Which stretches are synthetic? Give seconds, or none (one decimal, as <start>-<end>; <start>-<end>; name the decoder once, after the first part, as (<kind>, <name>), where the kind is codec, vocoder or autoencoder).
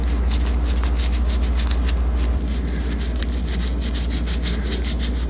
none